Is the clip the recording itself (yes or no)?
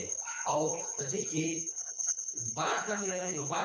no